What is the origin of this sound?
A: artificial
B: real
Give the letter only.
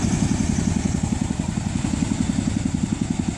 B